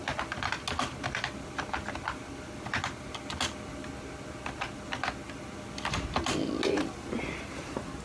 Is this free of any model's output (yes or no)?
yes